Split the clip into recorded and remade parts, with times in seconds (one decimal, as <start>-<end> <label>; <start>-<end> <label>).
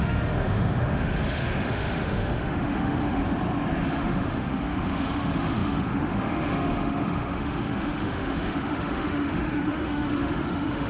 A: 0.0-3.2 remade; 3.2-3.9 recorded; 3.9-10.9 remade